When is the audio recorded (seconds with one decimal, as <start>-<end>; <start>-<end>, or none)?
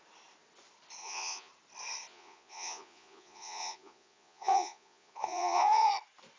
0.0-1.0; 1.5-2.1; 5.9-6.4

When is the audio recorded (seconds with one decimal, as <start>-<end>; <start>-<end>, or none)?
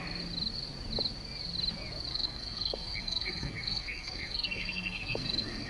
0.0-2.1